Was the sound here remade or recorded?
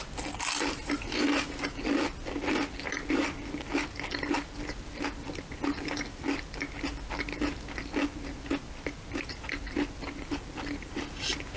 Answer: recorded